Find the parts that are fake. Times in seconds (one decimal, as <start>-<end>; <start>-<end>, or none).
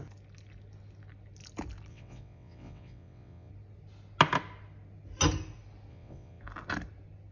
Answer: 1.9-3.5; 5.9-6.4